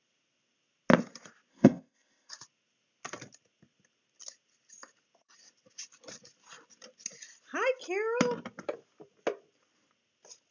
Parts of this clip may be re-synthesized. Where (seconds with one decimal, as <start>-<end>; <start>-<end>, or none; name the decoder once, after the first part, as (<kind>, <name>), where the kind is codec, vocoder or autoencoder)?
1.5-2.3 (codec, ZipCodec)